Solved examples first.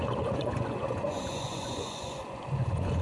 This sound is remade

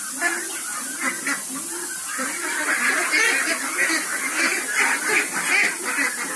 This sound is recorded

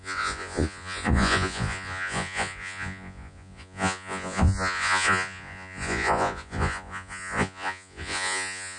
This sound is remade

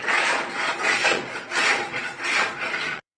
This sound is remade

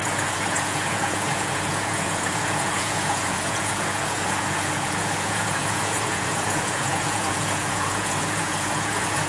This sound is remade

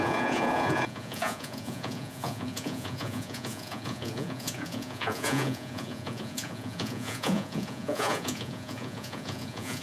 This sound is remade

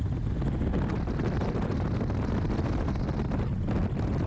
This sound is recorded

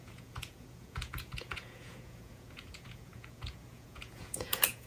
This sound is remade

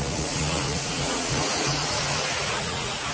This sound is remade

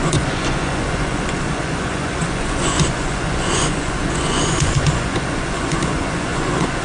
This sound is remade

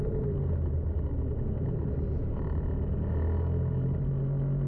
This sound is recorded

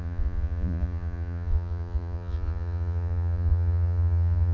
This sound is remade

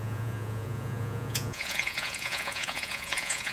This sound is remade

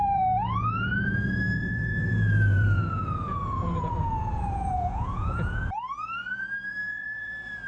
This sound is remade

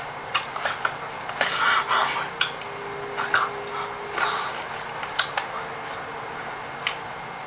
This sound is recorded